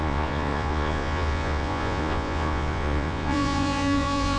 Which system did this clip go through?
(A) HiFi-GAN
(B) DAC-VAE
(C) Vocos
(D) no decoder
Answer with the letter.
C